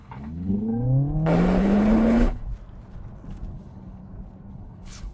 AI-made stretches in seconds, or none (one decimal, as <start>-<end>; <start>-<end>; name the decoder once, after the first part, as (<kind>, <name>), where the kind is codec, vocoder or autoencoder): 0.0-0.7 (codec, HILCodec); 1.6-2.4; 3.5-4.0; 4.5-5.1